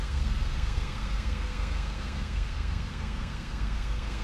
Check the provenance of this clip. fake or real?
fake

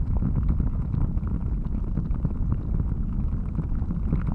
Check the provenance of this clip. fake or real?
real